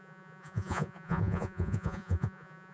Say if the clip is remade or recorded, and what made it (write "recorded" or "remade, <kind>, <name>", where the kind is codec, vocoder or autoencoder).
remade, vocoder, Vocos